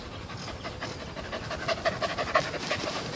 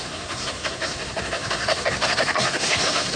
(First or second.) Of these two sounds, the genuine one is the first